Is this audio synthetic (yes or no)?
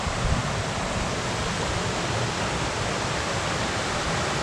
no